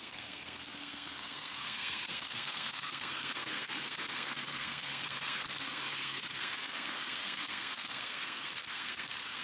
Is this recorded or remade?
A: remade